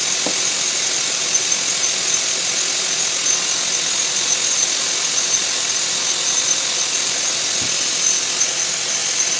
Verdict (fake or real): real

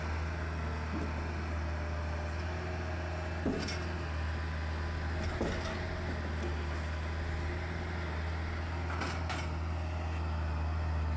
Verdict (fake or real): real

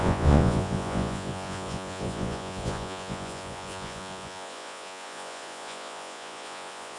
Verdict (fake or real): fake